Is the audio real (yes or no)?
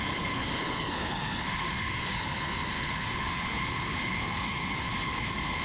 no